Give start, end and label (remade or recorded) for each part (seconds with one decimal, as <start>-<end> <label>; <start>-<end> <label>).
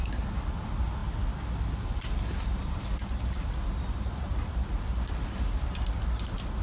0.0-6.6 recorded